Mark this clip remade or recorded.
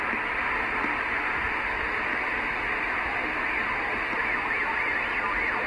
recorded